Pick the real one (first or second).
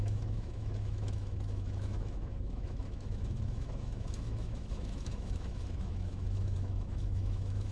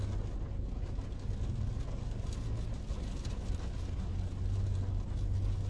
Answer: second